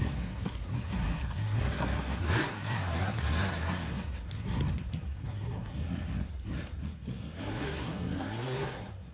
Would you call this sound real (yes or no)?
no